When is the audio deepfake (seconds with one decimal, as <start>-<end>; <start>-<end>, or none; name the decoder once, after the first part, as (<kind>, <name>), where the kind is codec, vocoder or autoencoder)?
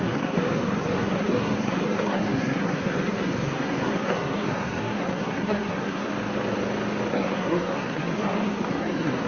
0.0-6.1 (codec, SNAC); 7.1-9.3